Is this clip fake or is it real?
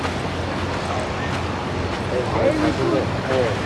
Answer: real